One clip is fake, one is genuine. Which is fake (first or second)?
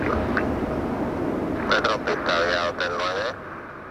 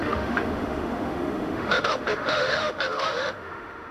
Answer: second